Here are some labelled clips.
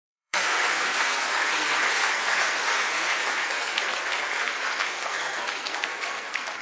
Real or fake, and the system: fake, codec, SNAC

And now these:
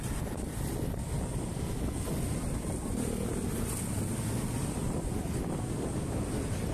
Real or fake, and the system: real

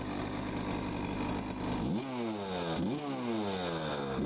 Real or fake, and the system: real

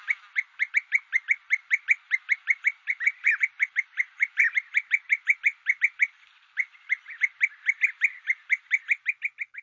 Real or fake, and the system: real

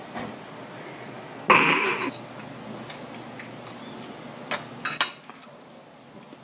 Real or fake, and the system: real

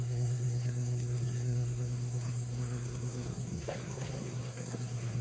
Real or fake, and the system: fake, codec, SNAC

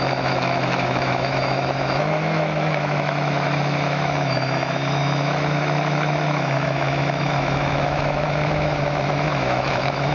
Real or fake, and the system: fake, autoencoder, DAC-VAE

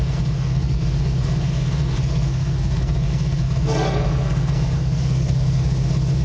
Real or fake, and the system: fake, codec, SNAC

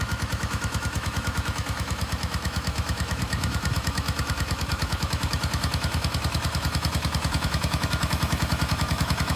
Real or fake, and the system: fake, autoencoder, DAC-VAE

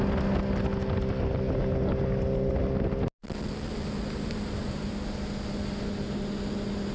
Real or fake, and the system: real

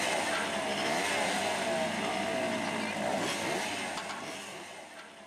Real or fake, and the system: real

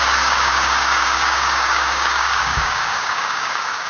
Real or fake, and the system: fake, codec, DAC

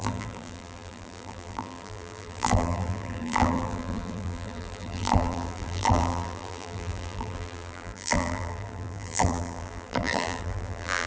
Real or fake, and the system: fake, vocoder, BigVGAN v2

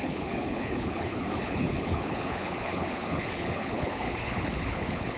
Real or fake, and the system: fake, codec, HILCodec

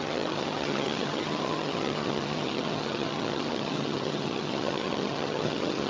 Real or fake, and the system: fake, vocoder, HiFi-GAN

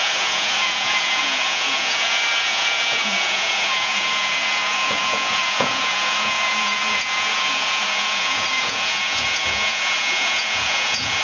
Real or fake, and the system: fake, vocoder, Vocos